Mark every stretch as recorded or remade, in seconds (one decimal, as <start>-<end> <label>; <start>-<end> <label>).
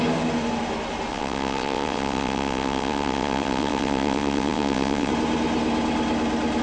0.0-1.1 recorded; 1.1-5.1 remade; 5.1-6.6 recorded